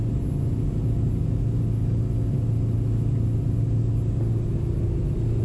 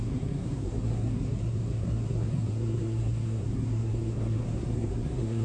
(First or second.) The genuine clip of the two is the first